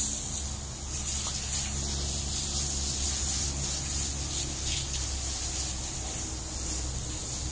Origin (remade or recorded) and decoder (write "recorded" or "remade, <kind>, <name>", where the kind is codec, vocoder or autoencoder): recorded